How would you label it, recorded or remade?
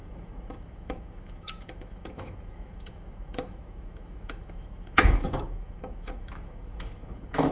remade